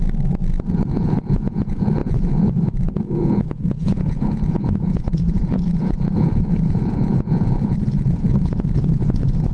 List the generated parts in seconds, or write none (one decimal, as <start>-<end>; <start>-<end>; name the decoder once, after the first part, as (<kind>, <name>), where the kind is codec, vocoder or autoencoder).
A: 0.9-9.5 (vocoder, Vocos)